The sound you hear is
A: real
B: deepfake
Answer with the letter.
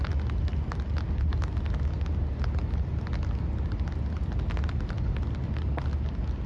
A